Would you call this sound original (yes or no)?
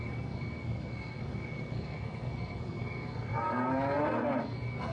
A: no